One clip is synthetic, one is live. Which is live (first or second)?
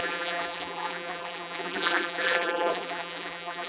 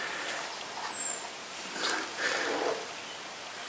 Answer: second